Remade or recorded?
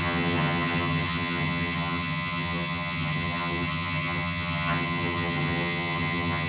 remade